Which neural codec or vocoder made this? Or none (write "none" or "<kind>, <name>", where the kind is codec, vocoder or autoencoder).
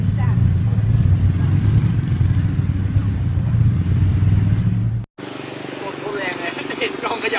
none